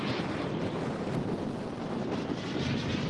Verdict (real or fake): real